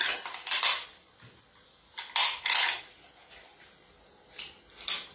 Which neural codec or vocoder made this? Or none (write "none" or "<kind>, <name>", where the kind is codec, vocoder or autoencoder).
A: none